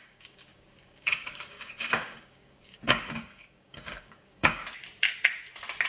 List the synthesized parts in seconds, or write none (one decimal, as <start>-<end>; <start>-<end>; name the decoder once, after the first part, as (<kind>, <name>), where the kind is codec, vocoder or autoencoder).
0.0-4.6 (codec, DAC)